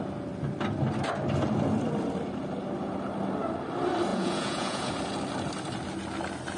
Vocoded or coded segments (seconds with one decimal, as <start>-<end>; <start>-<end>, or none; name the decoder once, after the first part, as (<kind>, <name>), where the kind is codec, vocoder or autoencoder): 4.1-4.9 (vocoder, Vocos)